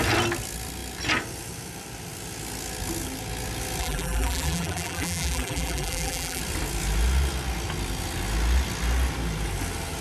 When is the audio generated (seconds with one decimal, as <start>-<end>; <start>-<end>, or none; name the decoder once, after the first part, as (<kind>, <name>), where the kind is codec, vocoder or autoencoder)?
3.8-6.4 (vocoder, BigVGAN v2)